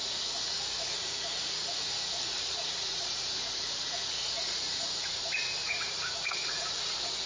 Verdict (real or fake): fake